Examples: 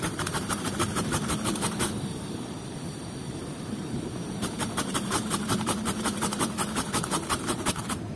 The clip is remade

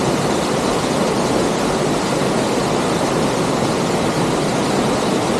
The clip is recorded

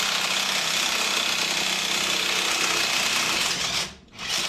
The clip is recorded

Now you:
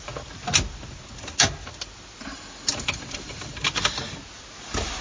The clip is recorded